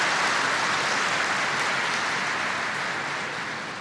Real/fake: real